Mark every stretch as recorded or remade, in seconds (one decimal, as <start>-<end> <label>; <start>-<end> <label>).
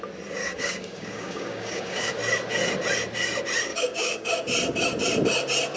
0.0-0.4 recorded; 0.4-2.1 remade; 2.1-3.7 recorded; 3.7-4.3 remade; 4.3-5.8 recorded